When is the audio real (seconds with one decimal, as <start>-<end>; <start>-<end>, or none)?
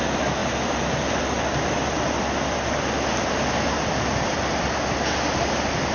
0.0-5.9